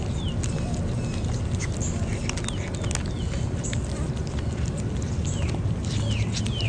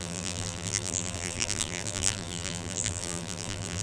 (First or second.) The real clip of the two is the first